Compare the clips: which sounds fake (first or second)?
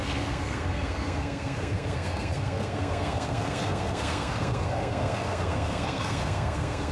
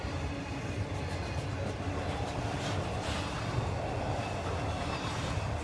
first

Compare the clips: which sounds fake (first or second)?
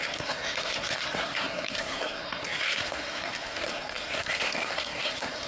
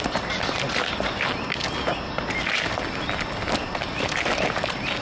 first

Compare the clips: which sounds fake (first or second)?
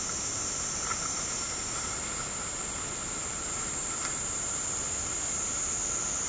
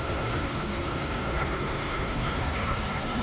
second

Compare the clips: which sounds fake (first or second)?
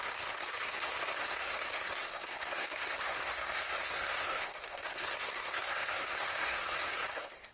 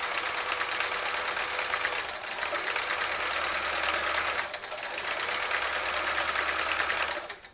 first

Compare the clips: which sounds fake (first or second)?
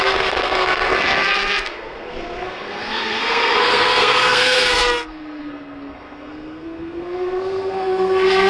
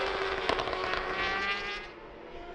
first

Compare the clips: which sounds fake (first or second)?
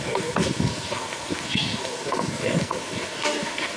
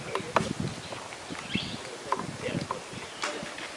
first